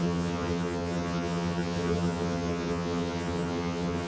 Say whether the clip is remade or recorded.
remade